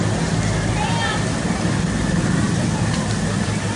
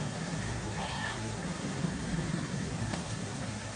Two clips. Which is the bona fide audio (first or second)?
first